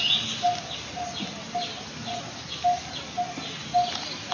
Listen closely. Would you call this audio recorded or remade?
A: recorded